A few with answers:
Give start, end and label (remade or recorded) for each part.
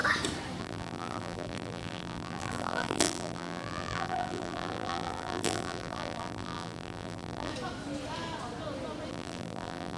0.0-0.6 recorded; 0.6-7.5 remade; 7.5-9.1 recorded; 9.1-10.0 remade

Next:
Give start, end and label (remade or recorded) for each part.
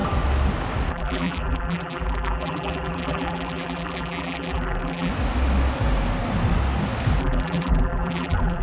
0.0-0.9 recorded; 0.9-5.1 remade; 5.1-7.2 recorded; 7.2-8.6 remade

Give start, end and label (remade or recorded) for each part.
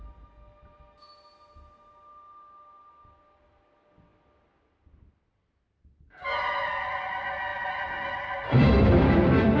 0.0-7.5 recorded; 7.5-9.6 remade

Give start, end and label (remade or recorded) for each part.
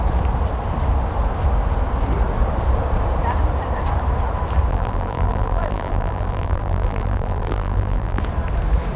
0.0-4.7 recorded; 4.7-8.2 remade; 8.2-9.0 recorded